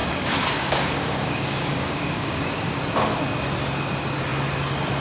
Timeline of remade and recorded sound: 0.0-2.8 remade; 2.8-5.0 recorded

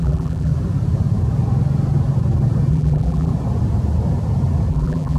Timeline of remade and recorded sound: 0.0-0.5 remade; 0.5-2.7 recorded; 2.7-3.3 remade; 3.3-4.7 recorded; 4.7-5.2 remade

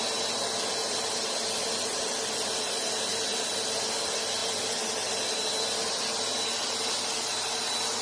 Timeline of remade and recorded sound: 0.0-8.0 recorded

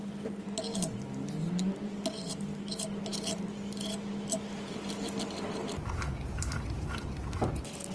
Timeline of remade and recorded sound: 0.0-7.9 recorded

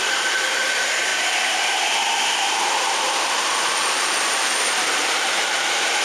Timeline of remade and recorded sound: 0.0-6.0 remade